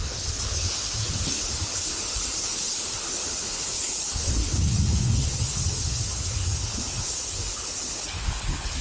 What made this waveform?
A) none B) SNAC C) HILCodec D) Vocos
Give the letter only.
C